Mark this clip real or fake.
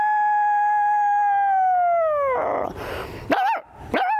real